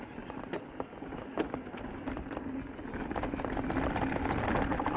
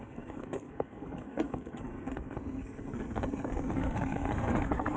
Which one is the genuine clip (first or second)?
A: first